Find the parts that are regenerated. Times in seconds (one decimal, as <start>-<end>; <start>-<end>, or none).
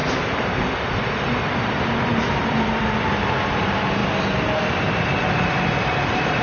0.0-2.4; 3.1-4.0; 4.6-6.4